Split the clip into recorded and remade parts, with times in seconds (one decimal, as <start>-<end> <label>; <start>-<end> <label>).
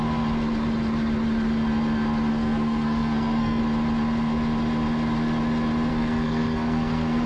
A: 0.0-2.3 recorded; 2.3-3.6 remade; 3.6-5.9 recorded; 5.9-7.3 remade